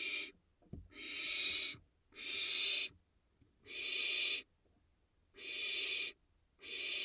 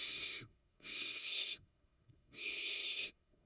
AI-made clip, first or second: second